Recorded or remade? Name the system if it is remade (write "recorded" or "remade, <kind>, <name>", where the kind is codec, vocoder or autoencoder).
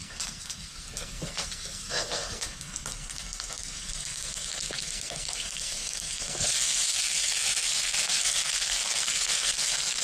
remade, codec, SNAC